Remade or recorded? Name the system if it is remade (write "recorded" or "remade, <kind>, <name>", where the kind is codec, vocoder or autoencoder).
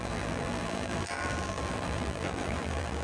remade, vocoder, BigVGAN v2